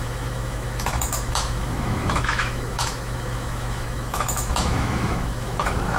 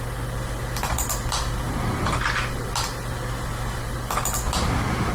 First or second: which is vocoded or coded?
first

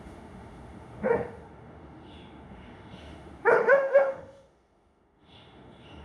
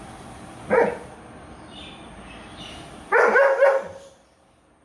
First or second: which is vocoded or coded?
first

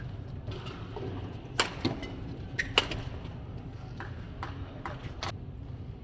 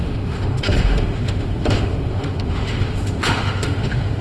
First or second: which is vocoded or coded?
second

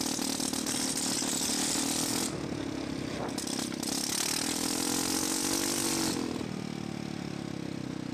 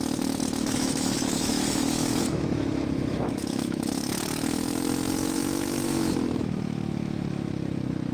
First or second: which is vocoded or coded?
second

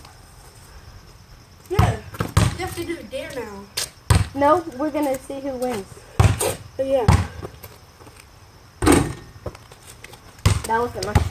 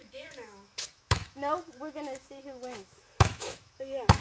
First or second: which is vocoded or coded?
second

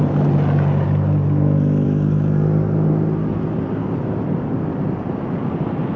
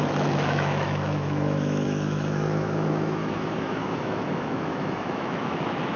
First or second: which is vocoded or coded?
second